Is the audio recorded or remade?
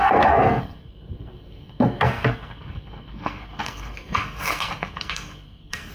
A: remade